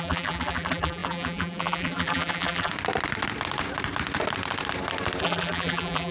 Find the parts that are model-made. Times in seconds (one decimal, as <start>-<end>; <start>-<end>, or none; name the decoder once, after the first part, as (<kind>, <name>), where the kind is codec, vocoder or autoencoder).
0.0-2.7 (vocoder, BigVGAN v2); 5.2-6.1